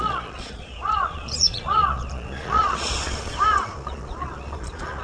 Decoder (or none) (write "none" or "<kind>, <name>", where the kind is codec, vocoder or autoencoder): vocoder, Vocos